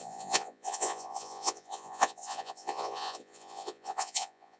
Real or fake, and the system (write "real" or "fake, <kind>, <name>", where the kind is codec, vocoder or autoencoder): fake, vocoder, Vocos